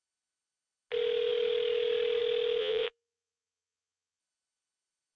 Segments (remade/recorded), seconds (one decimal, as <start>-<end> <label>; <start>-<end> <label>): 0.0-2.6 recorded; 2.6-4.2 remade; 4.2-5.2 recorded